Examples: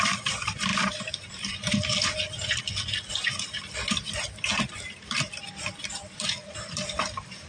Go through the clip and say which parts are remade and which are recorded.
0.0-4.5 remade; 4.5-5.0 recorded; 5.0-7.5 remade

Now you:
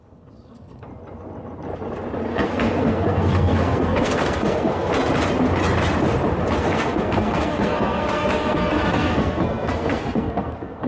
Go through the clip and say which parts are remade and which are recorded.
0.0-0.9 remade; 0.9-2.3 recorded; 2.3-4.9 remade; 4.9-6.6 recorded; 6.6-10.9 remade

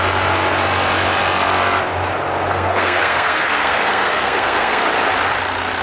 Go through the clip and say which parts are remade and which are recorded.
0.0-2.5 recorded; 2.5-4.8 remade; 4.8-5.8 recorded

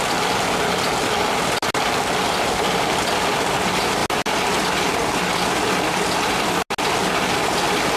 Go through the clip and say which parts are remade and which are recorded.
0.0-8.0 recorded